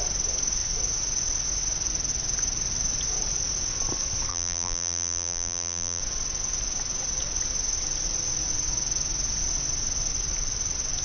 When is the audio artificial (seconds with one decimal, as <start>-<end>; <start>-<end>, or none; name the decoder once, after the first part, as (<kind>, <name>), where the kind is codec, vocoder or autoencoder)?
4.3-6.0 (vocoder, BigVGAN v2)